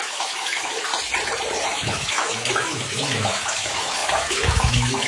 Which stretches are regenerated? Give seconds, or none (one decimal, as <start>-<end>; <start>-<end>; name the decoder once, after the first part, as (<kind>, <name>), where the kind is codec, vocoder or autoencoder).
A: 0.0-0.9 (autoencoder, DAC-VAE); 1.6-5.1